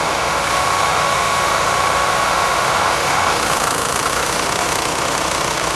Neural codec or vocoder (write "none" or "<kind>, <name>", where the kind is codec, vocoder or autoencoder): autoencoder, DAC-VAE